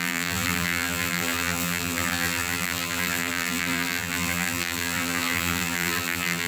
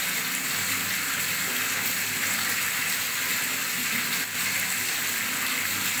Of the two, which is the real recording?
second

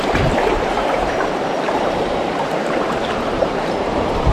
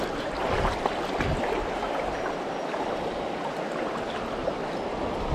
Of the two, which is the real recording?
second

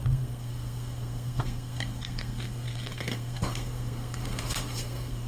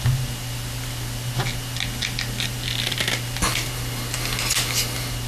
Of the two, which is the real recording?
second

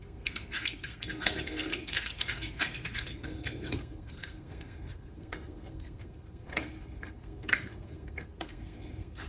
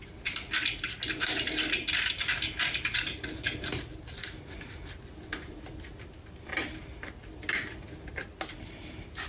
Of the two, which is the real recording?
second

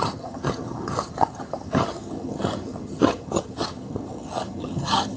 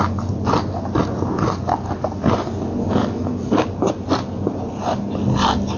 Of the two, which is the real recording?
second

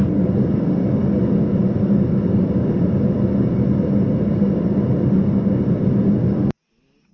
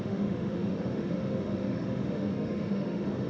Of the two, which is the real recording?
first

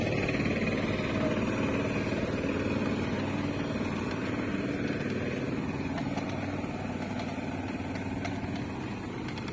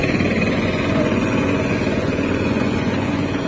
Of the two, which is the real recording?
first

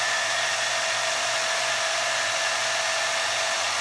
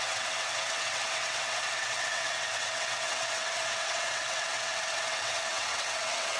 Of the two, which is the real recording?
first